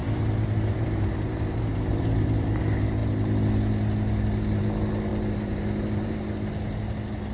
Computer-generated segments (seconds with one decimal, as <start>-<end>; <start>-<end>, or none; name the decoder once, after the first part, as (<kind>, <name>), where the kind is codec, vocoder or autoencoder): 0.0-2.6 (vocoder, BigVGAN v2); 5.1-6.2